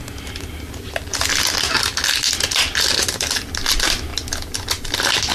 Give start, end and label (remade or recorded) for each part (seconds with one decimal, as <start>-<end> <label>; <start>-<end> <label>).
0.0-5.3 recorded